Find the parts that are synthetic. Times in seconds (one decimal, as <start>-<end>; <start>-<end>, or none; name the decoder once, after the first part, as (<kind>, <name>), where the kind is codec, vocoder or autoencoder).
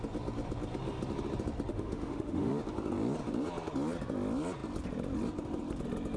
1.7-2.5 (autoencoder, DAC-VAE)